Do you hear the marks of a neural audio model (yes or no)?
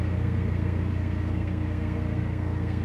yes